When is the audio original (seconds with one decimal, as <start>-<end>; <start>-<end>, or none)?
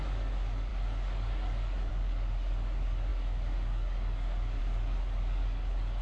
none